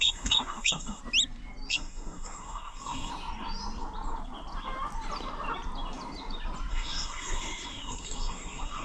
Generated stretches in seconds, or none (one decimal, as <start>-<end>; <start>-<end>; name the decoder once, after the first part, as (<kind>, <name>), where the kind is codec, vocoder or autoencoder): 0.0-1.0 (codec, SNAC); 1.7-3.1; 6.7-8.8